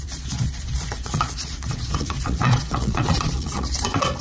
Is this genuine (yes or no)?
no